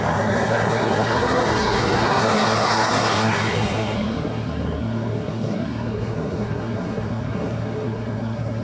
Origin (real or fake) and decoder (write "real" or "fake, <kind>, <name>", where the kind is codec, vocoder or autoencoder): fake, codec, SNAC